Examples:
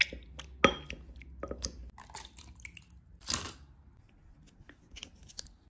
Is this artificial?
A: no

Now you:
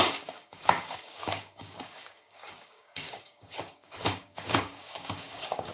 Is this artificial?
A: yes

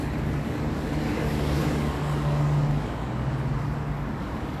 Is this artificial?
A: yes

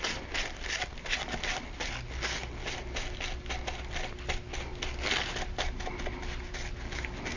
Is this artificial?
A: no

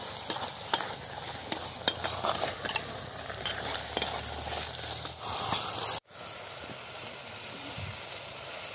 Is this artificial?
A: no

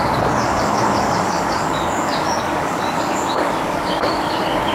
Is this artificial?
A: yes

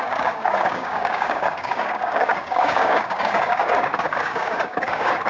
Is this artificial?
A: yes